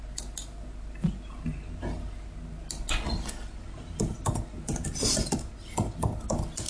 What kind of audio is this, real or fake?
real